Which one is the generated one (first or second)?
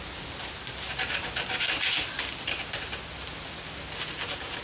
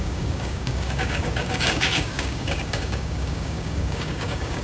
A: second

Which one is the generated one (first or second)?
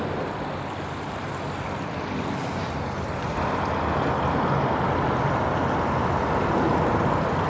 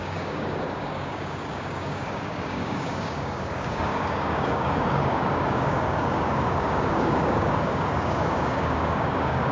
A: second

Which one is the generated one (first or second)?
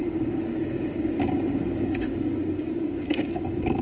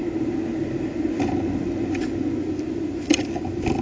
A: first